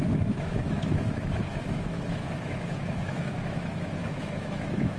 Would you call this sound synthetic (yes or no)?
yes